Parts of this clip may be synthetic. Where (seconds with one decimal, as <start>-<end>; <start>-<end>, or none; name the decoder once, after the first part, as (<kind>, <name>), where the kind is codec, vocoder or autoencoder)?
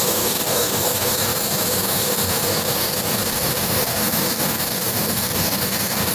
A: 0.0-6.1 (codec, DAC)